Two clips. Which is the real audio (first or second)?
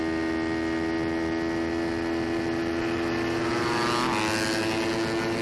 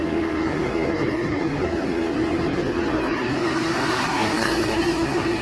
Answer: first